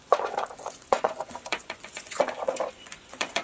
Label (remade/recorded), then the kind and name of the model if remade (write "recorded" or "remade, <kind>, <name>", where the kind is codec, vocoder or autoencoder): remade, vocoder, Vocos